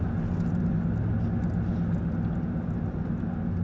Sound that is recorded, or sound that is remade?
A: recorded